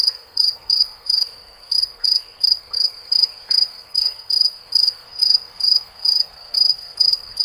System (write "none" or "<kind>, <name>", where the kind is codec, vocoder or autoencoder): codec, SNAC